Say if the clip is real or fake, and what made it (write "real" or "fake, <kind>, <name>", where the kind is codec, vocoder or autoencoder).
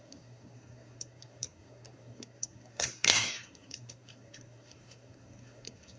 fake, codec, SNAC